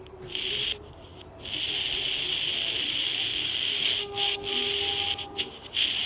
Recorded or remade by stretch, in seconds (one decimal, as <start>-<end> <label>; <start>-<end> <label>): 0.0-3.3 recorded; 3.3-4.5 remade; 4.5-6.1 recorded